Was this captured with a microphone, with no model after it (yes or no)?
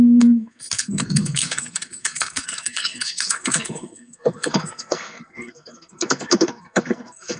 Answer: no